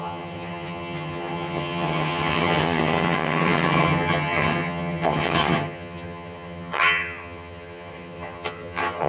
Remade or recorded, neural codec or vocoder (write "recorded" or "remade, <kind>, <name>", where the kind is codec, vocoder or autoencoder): remade, vocoder, HiFi-GAN